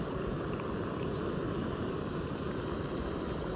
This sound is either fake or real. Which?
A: real